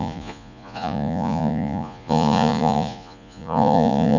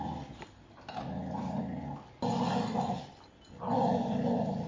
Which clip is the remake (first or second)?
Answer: first